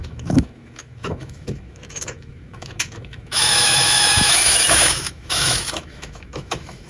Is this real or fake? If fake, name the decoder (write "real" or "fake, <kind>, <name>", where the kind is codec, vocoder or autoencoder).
fake, autoencoder, DAC-VAE